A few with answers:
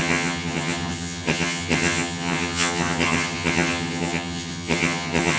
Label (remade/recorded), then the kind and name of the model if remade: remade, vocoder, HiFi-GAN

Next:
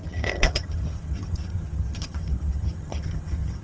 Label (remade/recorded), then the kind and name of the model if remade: remade, vocoder, HiFi-GAN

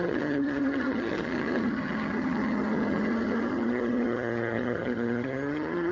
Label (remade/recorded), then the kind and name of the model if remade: remade, vocoder, HiFi-GAN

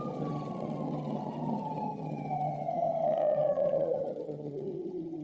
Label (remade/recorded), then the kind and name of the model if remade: remade, vocoder, HiFi-GAN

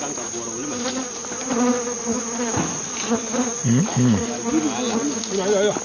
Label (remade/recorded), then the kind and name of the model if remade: recorded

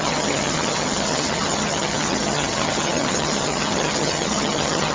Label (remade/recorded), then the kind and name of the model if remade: remade, vocoder, HiFi-GAN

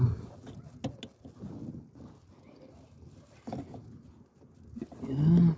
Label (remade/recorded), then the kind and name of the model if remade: recorded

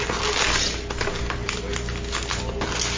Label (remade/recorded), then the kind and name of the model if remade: recorded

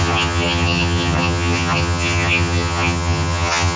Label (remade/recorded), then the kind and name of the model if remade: remade, vocoder, HiFi-GAN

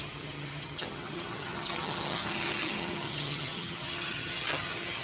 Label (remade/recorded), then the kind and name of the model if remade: remade, vocoder, HiFi-GAN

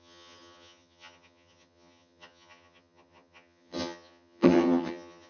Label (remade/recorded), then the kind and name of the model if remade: remade, vocoder, HiFi-GAN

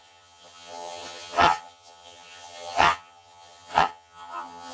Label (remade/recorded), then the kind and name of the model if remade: remade, vocoder, HiFi-GAN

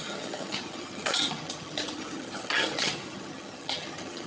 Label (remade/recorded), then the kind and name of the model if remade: remade, vocoder, HiFi-GAN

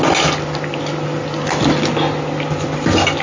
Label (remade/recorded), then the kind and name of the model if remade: recorded